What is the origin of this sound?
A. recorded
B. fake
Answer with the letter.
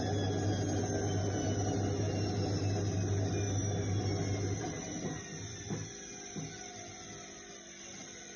A